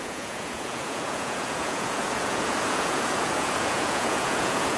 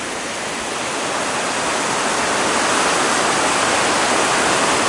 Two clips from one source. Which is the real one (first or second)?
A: second